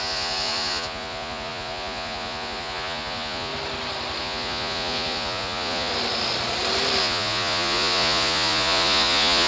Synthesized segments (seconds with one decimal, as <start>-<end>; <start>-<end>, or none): 0.0-3.5; 4.2-5.9; 7.0-9.5